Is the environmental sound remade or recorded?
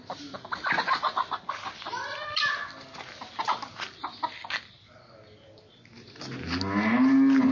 recorded